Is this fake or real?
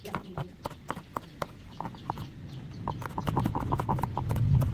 real